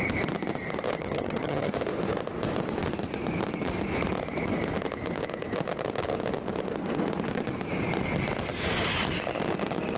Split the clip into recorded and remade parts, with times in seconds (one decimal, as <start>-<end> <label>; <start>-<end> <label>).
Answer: 0.0-1.0 recorded; 1.0-1.7 remade; 1.7-10.0 recorded